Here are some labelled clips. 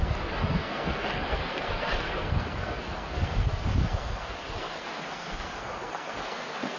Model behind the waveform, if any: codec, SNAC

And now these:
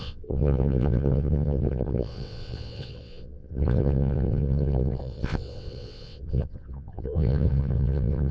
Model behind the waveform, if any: vocoder, WaveNeXt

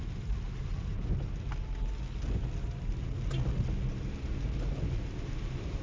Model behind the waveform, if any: none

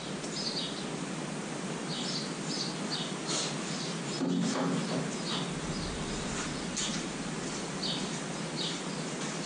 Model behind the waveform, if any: none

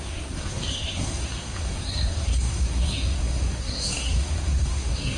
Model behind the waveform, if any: codec, SNAC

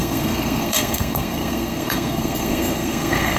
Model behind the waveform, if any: codec, SNAC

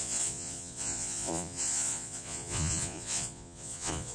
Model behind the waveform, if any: vocoder, Vocos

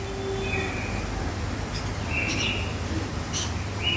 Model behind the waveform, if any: none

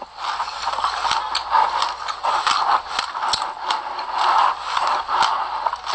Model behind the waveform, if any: none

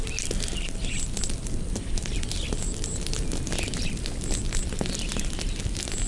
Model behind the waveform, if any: none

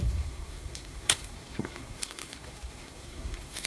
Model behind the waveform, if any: codec, SNAC